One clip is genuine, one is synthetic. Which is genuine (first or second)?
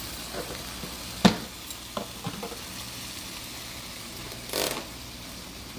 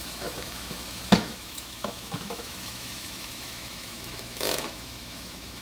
first